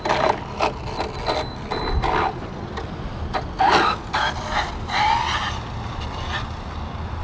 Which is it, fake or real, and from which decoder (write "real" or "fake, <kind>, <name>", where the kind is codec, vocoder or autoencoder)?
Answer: real